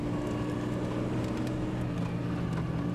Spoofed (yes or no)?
no